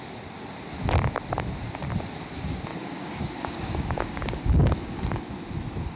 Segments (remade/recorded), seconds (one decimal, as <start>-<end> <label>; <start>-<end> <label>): 0.0-2.7 recorded; 2.7-5.3 remade; 5.3-6.0 recorded